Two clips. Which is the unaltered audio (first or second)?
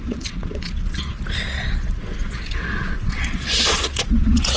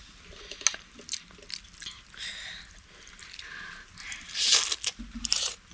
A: second